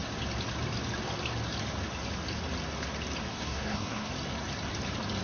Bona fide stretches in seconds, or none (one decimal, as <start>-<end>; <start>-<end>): 0.0-3.2; 4.1-5.2